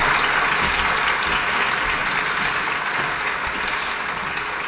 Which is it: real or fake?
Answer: real